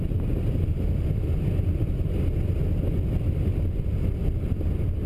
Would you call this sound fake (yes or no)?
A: no